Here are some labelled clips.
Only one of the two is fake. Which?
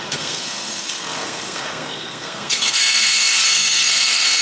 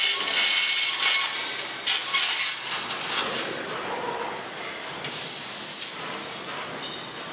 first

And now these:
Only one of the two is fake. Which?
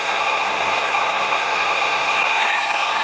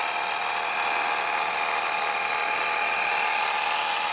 first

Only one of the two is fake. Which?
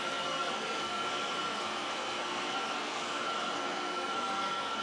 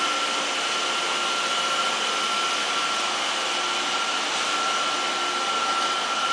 first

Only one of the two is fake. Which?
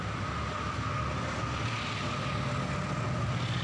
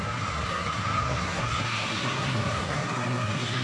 second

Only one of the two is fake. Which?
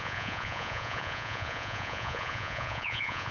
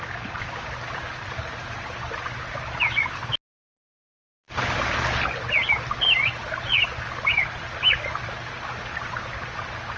first